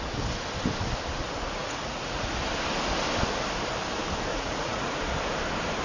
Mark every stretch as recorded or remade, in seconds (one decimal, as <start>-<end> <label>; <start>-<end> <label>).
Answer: 0.0-1.6 recorded; 1.6-2.3 remade; 2.3-4.3 recorded; 4.3-5.0 remade; 5.0-5.8 recorded